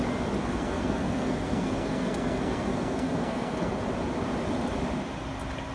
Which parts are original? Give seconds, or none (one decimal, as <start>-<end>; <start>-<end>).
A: 0.0-0.4; 3.8-5.7